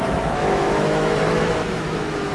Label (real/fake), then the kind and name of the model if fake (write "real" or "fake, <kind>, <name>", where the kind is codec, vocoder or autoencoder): fake, autoencoder, DAC-VAE